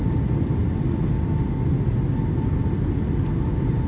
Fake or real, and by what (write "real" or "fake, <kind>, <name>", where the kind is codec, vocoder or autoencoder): real